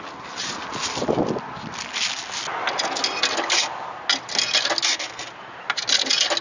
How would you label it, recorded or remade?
recorded